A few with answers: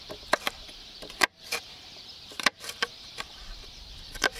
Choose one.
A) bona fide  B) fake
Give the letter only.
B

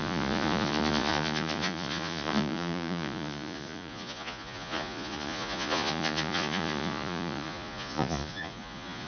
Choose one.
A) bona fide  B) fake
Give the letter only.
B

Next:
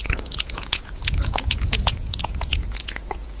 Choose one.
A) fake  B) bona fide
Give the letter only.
A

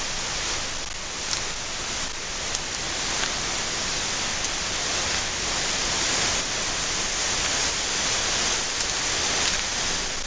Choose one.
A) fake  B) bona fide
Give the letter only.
B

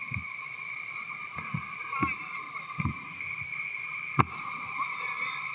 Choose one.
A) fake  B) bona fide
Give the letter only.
B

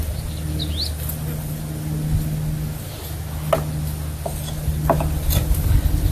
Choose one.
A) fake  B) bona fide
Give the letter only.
B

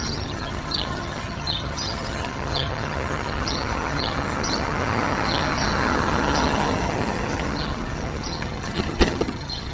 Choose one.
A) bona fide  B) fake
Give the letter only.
B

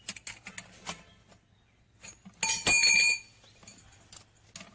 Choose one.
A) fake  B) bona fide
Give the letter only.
B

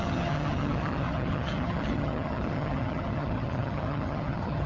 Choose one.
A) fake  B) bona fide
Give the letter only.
A